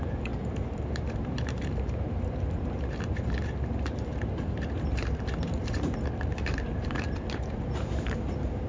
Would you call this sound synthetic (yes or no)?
yes